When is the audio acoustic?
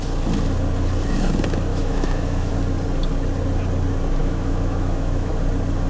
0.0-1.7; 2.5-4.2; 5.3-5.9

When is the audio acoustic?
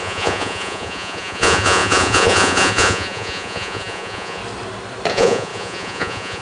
4.4-5.1